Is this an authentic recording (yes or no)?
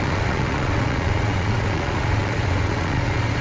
no